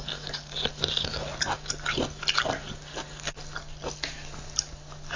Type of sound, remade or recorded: recorded